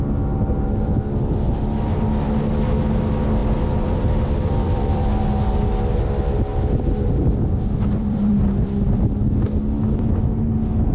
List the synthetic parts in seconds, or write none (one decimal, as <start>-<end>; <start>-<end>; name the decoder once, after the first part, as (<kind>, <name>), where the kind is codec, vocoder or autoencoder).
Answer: 3.4-5.2 (vocoder, BigVGAN v2); 6.5-8.3